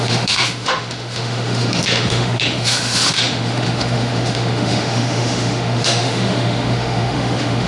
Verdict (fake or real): fake